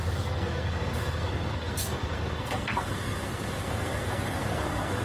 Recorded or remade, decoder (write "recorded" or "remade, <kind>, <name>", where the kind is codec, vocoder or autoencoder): remade, codec, SNAC